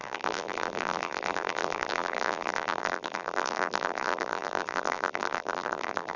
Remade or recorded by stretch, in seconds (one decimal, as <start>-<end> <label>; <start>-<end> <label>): 0.0-6.2 remade